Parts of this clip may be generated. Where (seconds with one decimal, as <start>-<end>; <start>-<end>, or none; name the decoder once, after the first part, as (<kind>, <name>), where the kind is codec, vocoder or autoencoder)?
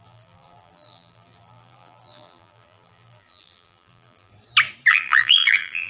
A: 0.0-4.3 (vocoder, BigVGAN v2); 4.9-5.9